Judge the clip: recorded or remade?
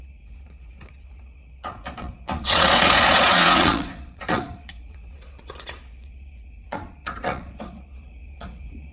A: remade